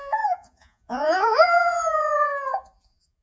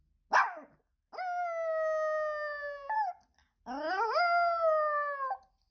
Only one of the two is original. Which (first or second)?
second